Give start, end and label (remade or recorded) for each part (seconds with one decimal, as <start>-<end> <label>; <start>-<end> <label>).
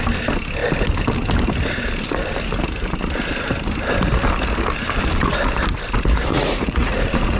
0.0-6.3 recorded; 6.3-7.4 remade